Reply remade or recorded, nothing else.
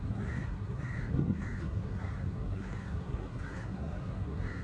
remade